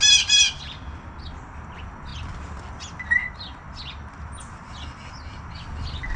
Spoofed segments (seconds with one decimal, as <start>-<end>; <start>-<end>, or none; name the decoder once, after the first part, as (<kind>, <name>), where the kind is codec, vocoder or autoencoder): none